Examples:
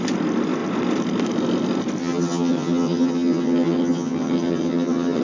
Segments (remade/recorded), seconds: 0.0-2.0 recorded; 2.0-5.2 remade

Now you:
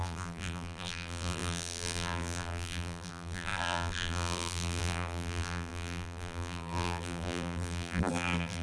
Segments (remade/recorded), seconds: 0.0-8.6 remade

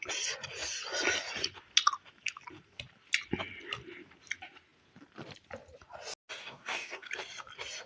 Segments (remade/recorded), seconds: 0.0-6.4 recorded; 6.4-7.1 remade; 7.1-7.9 recorded